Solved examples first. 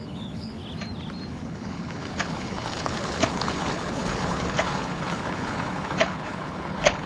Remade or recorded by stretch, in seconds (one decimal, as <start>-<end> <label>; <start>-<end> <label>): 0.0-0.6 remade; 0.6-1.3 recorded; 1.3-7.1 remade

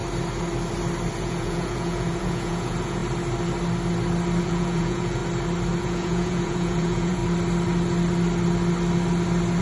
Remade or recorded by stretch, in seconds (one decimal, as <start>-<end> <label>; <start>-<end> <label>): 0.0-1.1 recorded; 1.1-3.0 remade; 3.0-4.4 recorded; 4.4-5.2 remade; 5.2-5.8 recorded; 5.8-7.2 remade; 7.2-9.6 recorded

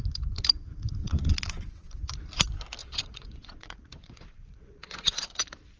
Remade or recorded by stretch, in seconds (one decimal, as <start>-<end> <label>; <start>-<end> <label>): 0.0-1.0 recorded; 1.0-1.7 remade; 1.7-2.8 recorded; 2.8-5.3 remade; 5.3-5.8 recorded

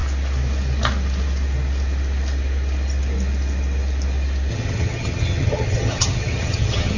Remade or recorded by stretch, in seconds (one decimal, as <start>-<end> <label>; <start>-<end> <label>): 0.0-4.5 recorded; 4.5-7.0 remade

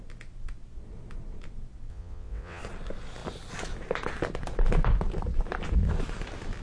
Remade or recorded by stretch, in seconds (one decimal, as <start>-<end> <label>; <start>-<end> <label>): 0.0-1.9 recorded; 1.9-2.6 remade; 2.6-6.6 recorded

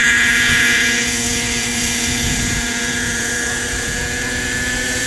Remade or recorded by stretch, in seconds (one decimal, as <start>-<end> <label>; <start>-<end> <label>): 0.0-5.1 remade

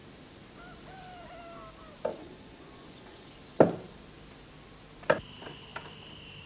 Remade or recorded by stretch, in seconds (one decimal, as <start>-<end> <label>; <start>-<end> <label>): 0.0-2.2 recorded; 2.2-3.3 remade; 3.3-6.5 recorded